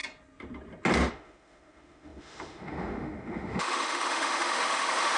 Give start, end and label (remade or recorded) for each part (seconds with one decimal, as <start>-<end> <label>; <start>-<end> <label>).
0.0-1.1 recorded; 1.1-5.2 remade